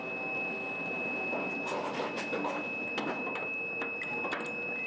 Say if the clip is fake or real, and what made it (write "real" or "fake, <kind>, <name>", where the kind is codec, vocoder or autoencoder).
real